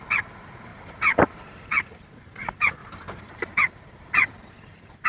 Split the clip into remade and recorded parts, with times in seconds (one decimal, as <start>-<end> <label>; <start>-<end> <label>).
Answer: 0.0-0.7 recorded; 0.7-1.7 remade; 1.7-2.8 recorded; 2.8-3.6 remade; 3.6-5.1 recorded